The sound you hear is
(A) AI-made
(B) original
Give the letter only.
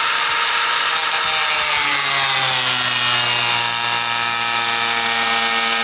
B